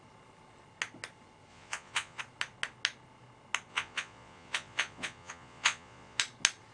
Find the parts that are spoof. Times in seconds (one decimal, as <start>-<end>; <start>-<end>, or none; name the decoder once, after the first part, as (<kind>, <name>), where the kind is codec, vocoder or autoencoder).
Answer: 1.5-2.2 (vocoder, Vocos); 3.7-6.2